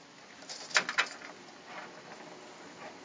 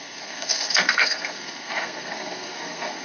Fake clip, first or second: second